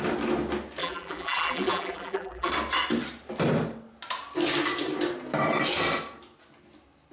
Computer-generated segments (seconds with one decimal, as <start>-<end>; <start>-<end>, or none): 0.8-2.5